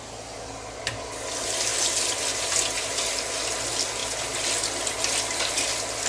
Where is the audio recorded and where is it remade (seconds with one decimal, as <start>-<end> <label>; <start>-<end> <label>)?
0.0-6.1 recorded